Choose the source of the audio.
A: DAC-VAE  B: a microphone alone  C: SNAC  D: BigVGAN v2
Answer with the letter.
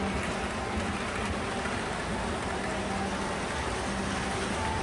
B